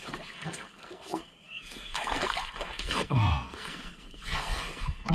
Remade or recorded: remade